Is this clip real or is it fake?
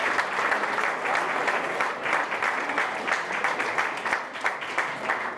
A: real